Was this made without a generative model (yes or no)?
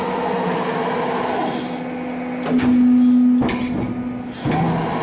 yes